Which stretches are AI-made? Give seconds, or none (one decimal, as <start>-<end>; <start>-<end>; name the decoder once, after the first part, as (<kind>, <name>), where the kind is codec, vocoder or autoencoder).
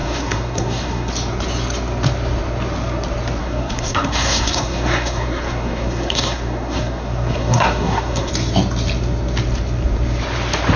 0.0-1.1 (codec, SNAC); 3.4-8.3